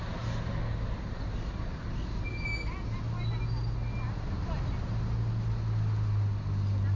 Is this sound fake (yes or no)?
no